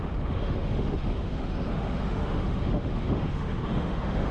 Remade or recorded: remade